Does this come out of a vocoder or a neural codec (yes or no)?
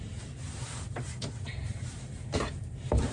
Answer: yes